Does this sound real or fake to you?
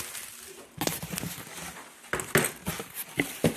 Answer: real